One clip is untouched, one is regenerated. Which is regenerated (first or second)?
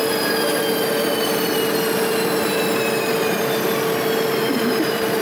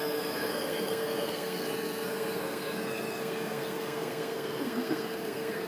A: second